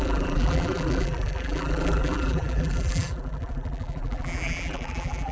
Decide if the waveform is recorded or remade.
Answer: remade